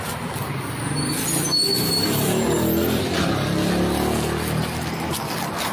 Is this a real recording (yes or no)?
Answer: yes